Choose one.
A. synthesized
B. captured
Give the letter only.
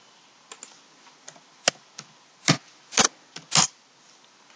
B